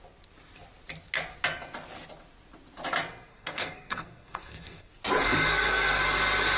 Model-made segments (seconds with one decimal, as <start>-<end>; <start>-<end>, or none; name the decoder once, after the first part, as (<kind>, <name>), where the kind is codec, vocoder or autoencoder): 3.3-4.9 (codec, SNAC); 5.5-6.0